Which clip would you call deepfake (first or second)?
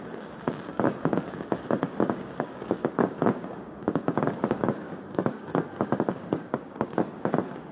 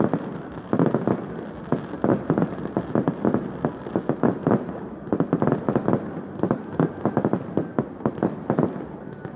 first